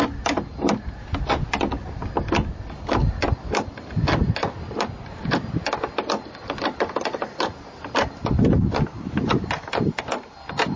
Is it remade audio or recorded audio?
recorded